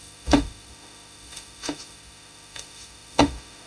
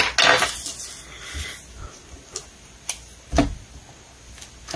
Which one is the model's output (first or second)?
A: first